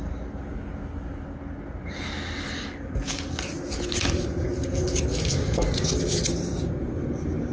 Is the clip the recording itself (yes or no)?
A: yes